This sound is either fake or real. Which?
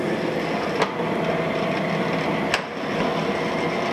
real